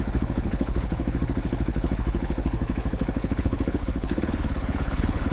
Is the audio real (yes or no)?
no